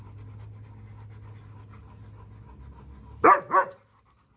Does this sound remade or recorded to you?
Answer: recorded